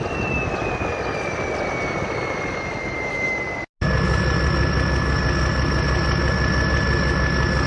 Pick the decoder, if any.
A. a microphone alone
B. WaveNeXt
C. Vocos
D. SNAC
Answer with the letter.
A